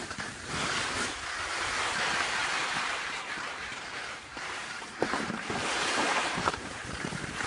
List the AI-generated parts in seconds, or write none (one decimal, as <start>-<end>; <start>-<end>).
2.4-6.9